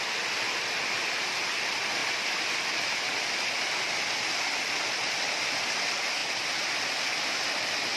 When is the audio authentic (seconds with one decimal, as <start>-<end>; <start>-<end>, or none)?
0.0-8.0